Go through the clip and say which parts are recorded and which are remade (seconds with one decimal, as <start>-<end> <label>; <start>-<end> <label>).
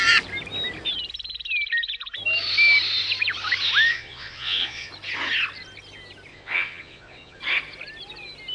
0.0-3.9 recorded; 3.9-4.9 remade; 4.9-6.3 recorded; 6.3-7.4 remade; 7.4-8.5 recorded